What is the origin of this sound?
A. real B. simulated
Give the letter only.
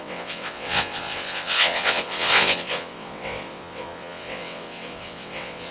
B